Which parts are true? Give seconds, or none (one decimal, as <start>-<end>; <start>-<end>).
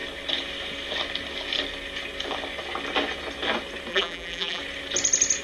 0.0-3.9; 4.6-5.4